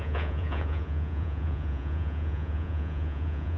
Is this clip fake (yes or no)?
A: yes